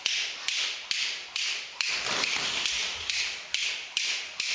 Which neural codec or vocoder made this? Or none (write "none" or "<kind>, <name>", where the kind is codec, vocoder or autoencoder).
none